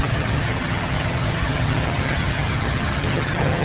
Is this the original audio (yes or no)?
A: no